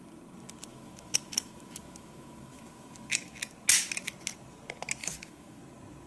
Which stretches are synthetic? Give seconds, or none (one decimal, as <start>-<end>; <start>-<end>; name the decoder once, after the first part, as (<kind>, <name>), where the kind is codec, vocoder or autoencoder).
0.7-3.4 (autoencoder, DAC-VAE); 5.0-5.6